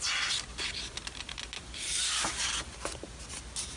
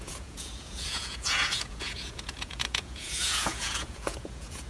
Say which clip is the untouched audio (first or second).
first